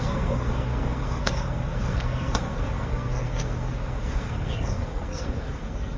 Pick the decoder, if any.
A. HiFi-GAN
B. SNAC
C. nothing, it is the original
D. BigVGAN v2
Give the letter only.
B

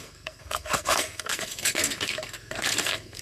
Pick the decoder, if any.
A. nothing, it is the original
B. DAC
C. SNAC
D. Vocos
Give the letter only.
C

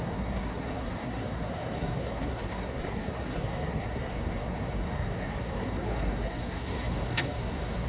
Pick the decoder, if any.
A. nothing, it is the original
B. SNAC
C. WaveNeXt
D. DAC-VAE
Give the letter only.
B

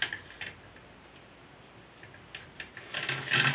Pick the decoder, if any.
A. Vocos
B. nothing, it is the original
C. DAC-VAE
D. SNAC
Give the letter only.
B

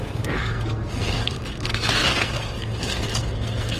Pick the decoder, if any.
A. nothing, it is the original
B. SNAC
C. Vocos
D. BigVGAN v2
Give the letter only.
B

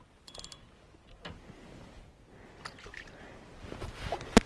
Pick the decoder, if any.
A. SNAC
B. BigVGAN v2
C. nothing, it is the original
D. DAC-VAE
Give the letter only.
C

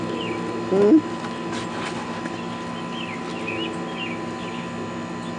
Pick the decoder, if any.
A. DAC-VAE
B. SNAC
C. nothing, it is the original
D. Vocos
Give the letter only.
C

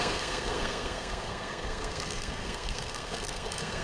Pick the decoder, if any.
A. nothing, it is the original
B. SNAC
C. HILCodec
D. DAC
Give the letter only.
B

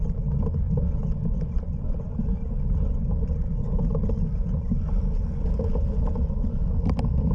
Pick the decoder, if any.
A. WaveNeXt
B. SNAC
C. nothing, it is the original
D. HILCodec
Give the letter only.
C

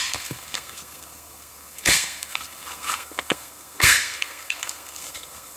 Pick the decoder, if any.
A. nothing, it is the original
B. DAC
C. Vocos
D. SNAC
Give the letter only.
D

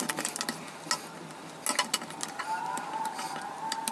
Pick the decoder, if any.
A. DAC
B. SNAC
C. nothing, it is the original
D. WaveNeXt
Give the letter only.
C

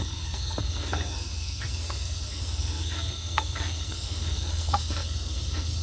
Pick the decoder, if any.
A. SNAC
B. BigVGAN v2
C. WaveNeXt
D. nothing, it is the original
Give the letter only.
A